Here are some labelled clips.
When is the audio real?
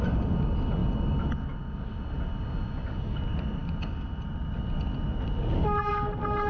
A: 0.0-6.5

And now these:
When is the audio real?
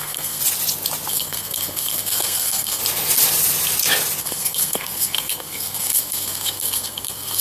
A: 0.4-1.1; 2.8-4.2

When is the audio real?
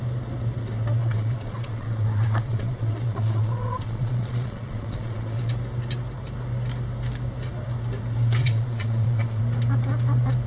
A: 0.0-1.0; 5.5-8.4; 9.4-10.5